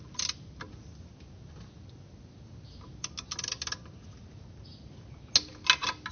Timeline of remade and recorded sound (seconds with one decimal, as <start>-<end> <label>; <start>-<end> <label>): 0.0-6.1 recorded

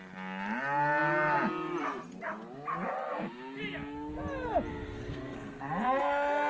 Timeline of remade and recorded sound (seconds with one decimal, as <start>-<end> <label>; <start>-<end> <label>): 0.0-4.7 recorded; 4.7-5.7 remade; 5.7-6.5 recorded

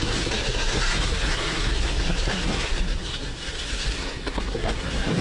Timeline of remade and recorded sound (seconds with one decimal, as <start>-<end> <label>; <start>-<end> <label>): 0.0-5.2 remade

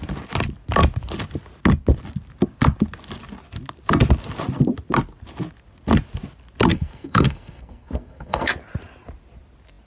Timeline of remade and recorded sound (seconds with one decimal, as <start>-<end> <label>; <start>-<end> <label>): 0.0-6.7 recorded; 6.7-8.5 remade; 8.5-9.9 recorded